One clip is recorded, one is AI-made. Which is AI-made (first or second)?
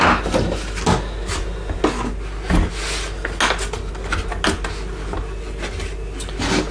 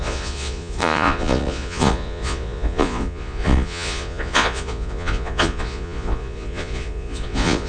second